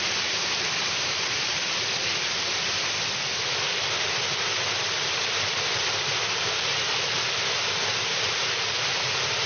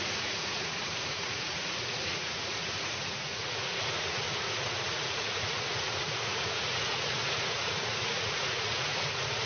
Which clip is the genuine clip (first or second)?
first